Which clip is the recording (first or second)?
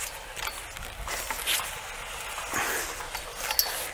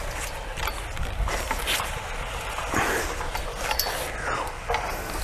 first